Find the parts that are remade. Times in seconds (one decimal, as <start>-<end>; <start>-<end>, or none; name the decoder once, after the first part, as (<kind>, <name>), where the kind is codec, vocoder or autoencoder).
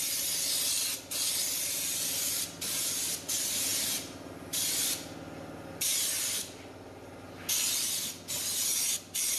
none